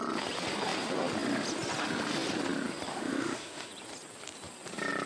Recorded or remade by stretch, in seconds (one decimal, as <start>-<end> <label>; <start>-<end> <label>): 0.0-2.9 recorded; 2.9-3.7 remade; 3.7-5.1 recorded